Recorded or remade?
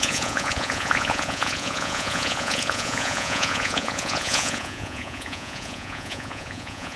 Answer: remade